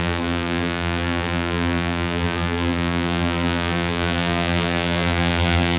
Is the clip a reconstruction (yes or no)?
yes